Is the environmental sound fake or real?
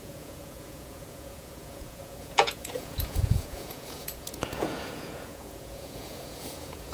fake